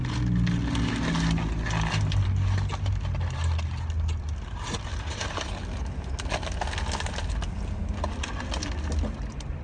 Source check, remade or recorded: recorded